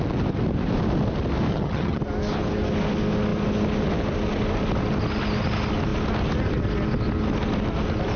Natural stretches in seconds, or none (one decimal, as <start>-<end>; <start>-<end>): 0.0-1.5; 2.0-8.2